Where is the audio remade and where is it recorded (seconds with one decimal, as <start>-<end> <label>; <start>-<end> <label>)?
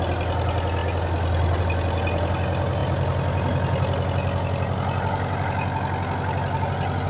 0.0-7.1 recorded